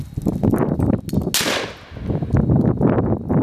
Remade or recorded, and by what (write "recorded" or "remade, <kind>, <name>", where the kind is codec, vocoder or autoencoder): recorded